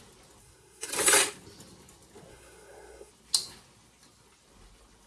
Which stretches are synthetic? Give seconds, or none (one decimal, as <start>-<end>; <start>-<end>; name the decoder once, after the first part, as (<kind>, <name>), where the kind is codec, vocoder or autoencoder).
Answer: 0.4-0.9 (codec, SNAC); 2.3-3.1